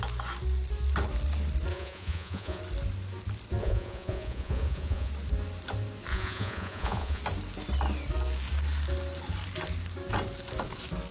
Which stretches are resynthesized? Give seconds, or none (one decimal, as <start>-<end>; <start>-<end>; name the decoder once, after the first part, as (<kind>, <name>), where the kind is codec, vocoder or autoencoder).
1.7-2.6 (vocoder, Vocos); 3.6-5.1; 6.1-7.2